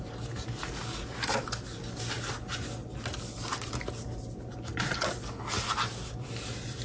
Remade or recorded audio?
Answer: recorded